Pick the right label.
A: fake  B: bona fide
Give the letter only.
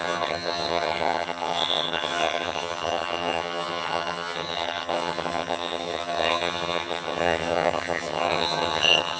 A